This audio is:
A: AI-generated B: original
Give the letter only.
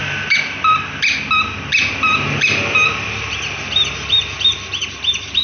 B